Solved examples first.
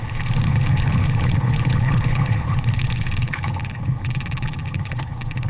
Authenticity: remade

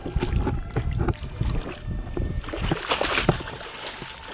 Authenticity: recorded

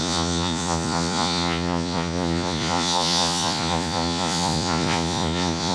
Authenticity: remade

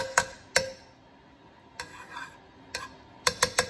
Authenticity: recorded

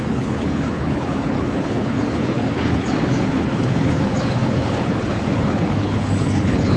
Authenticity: remade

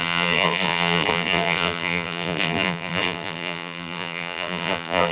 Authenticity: remade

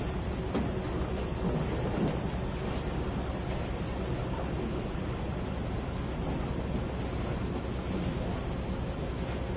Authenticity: recorded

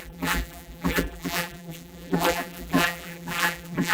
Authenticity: remade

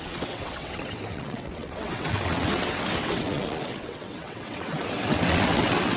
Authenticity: remade